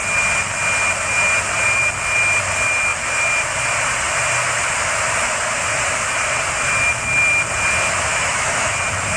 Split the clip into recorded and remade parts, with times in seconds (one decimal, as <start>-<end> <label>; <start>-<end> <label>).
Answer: 0.0-8.1 recorded; 8.1-8.7 remade; 8.7-9.2 recorded